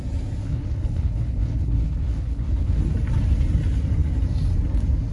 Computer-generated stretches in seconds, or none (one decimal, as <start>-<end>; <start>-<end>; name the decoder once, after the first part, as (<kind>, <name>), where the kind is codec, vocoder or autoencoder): 0.4-2.8 (codec, HILCodec)